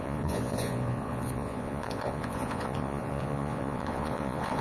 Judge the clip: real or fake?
fake